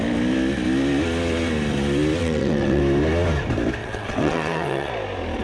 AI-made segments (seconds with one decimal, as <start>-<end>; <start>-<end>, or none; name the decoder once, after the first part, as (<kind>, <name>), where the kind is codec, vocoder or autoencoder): 2.2-2.8 (vocoder, WaveNeXt); 3.8-4.9